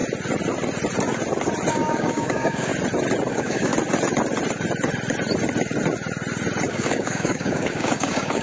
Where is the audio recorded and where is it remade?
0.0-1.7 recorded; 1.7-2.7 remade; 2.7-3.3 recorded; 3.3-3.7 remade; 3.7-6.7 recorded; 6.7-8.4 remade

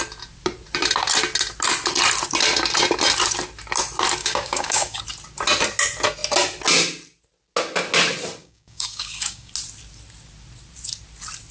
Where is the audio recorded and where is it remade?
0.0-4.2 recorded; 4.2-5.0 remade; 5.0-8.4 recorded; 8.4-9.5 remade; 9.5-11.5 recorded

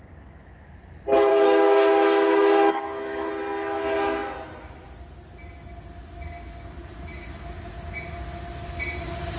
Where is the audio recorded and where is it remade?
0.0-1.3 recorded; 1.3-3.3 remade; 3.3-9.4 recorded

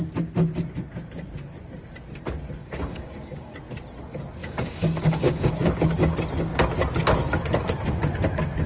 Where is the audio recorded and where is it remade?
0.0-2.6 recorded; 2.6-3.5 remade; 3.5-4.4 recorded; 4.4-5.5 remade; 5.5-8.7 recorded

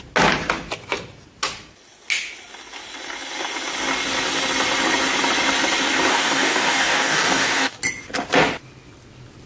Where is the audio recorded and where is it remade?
0.0-6.1 recorded; 6.1-7.8 remade; 7.8-9.5 recorded

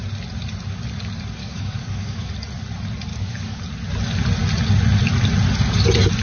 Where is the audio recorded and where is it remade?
0.0-1.4 recorded; 1.4-2.3 remade; 2.3-3.1 recorded; 3.1-3.6 remade; 3.6-6.2 recorded